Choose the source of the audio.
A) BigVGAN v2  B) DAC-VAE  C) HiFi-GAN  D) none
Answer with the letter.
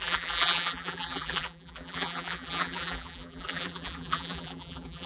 A